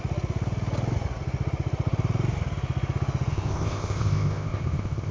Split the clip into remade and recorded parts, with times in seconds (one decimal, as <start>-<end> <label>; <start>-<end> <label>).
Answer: 0.0-3.3 recorded; 3.3-5.1 remade